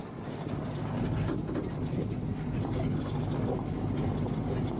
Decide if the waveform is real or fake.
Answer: real